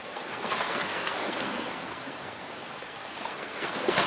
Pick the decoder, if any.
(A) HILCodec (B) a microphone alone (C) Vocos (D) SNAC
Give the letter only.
D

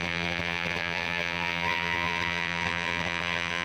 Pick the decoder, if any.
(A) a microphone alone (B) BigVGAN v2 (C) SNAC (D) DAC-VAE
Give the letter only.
B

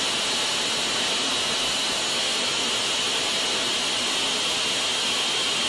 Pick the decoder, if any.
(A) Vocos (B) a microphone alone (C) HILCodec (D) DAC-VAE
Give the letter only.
B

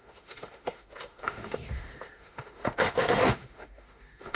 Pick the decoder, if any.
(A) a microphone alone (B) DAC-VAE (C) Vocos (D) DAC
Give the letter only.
B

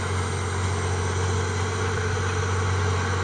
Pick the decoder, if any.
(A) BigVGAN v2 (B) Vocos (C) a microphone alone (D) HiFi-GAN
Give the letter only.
C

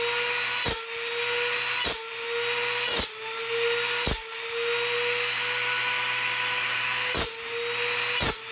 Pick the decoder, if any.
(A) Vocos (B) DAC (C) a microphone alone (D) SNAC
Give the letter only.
C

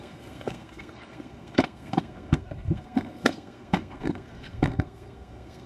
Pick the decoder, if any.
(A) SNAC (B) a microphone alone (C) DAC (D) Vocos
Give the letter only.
A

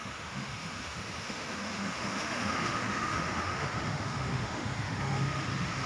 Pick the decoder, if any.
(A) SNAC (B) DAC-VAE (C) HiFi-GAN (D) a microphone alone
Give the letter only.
B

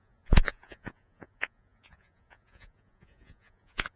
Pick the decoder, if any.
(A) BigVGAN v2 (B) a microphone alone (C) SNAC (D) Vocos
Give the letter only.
D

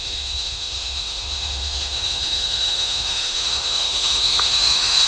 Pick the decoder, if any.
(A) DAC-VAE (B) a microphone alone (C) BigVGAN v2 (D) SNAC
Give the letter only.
A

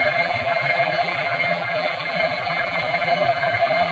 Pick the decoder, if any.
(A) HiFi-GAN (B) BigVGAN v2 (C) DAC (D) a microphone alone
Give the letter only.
B